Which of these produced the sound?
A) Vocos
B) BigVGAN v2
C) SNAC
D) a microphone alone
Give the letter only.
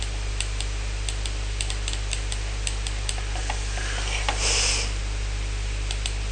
D